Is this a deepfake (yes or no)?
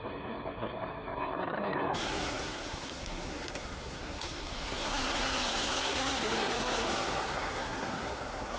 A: yes